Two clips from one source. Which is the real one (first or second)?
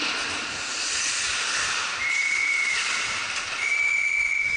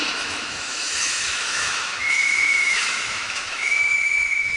first